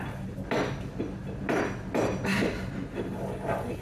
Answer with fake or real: real